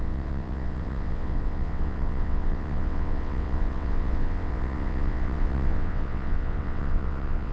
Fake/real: fake